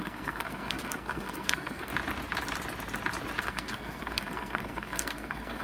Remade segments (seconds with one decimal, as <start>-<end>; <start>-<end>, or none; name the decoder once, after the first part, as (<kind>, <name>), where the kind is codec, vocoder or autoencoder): 0.0-1.9 (codec, SNAC); 3.4-5.6